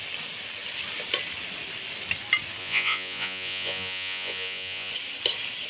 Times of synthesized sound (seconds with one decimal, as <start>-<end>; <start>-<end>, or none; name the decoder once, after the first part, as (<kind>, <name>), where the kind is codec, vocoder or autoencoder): 2.6-4.9 (vocoder, Vocos)